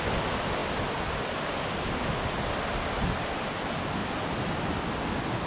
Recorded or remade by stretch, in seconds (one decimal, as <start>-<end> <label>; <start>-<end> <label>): 0.0-4.0 recorded; 4.0-4.6 remade; 4.6-5.5 recorded